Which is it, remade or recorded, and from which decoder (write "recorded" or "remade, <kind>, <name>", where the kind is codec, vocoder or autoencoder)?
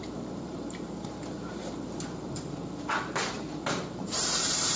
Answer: remade, vocoder, BigVGAN v2